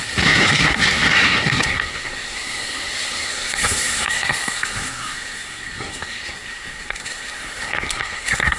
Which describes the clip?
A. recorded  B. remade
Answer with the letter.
B